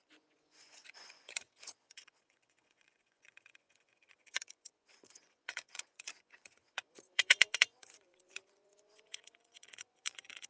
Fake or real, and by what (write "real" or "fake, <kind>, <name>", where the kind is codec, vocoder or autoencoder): fake, vocoder, Vocos